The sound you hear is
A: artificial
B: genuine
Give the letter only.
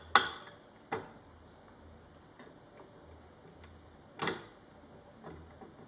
B